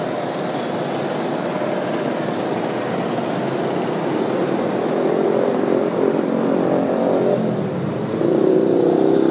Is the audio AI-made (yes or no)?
no